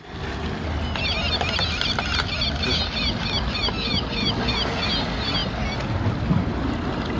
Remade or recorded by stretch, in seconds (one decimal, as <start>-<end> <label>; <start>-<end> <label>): 0.0-7.2 recorded